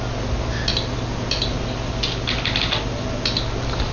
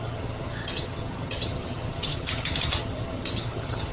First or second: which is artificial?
second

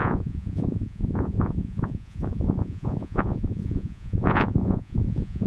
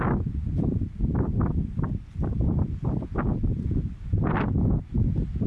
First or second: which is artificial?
first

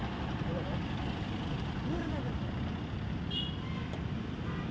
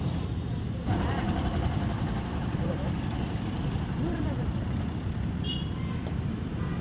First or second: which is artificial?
second